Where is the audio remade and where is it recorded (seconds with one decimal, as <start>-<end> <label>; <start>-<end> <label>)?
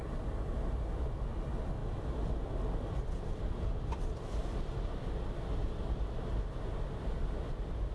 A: 0.0-7.9 recorded